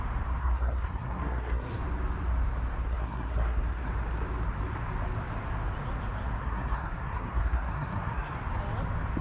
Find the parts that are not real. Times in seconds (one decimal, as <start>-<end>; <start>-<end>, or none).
0.4-1.8; 2.8-3.9; 6.4-8.4